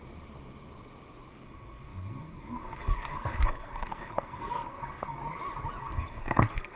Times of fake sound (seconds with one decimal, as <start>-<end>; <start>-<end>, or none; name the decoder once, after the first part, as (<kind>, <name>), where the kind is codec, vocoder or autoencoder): 1.3-5.2 (codec, SNAC); 5.8-6.8

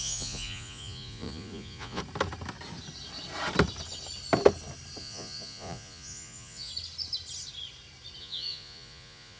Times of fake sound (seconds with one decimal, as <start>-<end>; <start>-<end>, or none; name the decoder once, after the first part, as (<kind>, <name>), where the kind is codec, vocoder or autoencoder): 0.0-2.0 (vocoder, Vocos); 5.0-6.7; 8.2-9.4

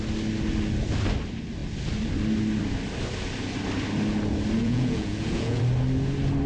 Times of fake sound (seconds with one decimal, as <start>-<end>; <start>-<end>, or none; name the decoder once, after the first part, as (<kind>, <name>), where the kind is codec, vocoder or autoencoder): 4.6-5.6 (vocoder, Vocos)

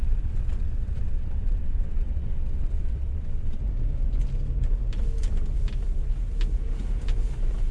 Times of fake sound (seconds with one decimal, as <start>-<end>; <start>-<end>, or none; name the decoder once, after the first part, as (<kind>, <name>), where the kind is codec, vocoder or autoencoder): 0.0-3.6 (vocoder, WaveNeXt)